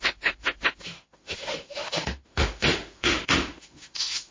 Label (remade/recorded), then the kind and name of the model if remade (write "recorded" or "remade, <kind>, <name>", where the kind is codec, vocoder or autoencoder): remade, autoencoder, DAC-VAE